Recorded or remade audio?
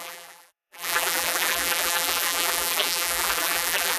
remade